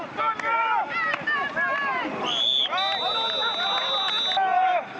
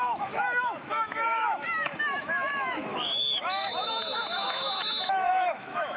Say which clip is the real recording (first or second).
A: first